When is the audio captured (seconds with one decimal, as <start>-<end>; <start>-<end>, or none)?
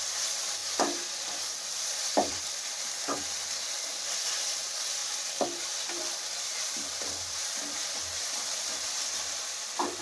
5.0-5.6; 7.8-9.2